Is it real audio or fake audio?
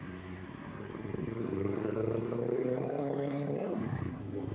fake